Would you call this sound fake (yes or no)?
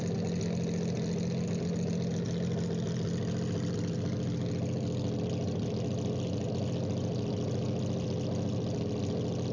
no